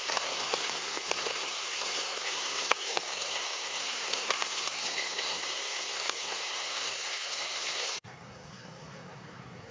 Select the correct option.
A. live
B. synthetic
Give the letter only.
B